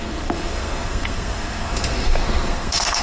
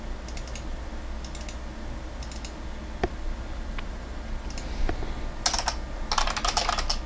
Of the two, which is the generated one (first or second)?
first